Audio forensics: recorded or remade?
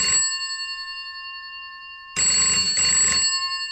recorded